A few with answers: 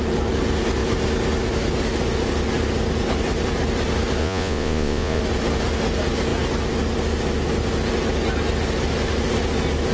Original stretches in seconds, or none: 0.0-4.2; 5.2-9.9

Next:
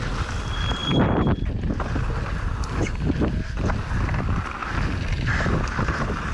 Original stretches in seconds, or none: 0.0-6.3

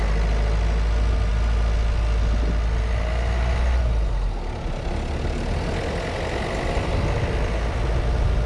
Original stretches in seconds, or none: 0.0-8.5